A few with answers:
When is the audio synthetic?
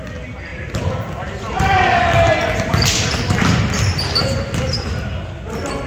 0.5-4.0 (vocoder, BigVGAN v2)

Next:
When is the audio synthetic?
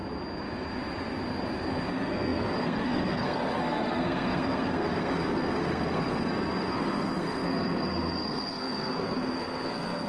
1.9-10.1 (codec, SNAC)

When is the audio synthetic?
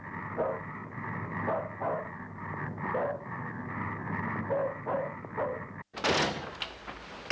none